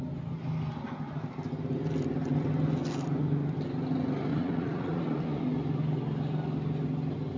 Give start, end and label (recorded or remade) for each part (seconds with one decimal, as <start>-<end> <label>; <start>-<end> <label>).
0.0-4.3 recorded; 4.3-5.4 remade; 5.4-7.4 recorded